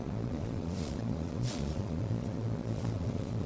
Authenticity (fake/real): fake